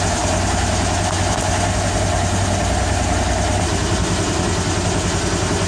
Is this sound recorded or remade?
recorded